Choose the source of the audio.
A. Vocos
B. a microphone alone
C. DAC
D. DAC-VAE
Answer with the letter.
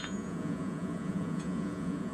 A